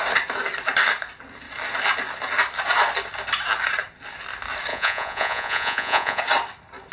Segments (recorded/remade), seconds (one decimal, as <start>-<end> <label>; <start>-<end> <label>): 0.0-4.7 recorded; 4.7-6.2 remade; 6.2-6.9 recorded